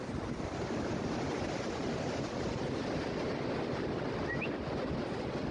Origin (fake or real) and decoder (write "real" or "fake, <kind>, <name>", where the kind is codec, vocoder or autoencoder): real